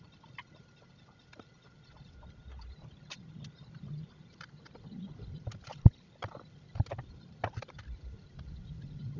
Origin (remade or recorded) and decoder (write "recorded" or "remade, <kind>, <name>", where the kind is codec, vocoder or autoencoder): recorded